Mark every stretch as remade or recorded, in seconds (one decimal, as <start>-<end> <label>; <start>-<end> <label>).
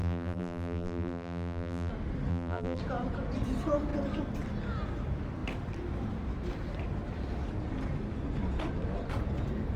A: 0.0-1.9 remade; 1.9-2.3 recorded; 2.3-2.8 remade; 2.8-9.8 recorded